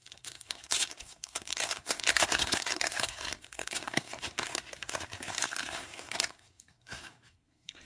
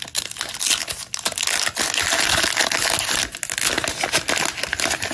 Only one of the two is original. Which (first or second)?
second